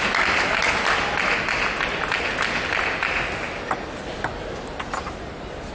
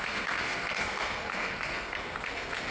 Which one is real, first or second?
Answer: first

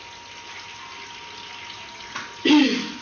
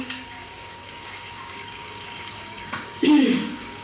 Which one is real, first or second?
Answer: first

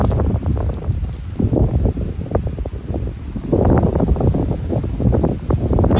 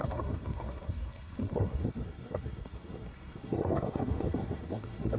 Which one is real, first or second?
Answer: first